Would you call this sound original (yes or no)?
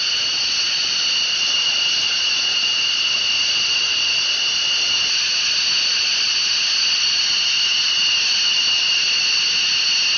yes